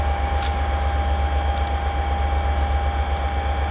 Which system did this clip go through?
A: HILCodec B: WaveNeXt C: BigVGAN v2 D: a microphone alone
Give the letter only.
D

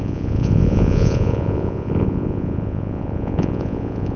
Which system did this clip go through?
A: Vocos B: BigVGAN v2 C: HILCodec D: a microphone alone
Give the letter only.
A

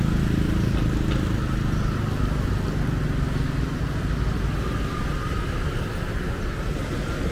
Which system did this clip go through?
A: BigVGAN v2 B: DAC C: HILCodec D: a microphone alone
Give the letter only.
D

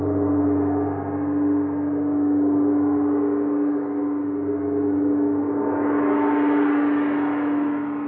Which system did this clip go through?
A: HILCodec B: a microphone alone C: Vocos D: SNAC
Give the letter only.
B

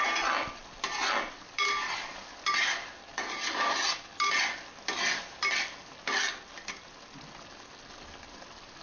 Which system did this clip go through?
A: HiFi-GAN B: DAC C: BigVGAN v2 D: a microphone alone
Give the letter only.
D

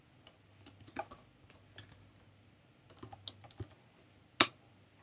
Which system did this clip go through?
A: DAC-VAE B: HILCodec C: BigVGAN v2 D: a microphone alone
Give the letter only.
D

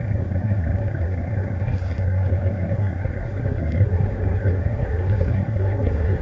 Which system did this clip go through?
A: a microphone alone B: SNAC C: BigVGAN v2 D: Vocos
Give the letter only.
B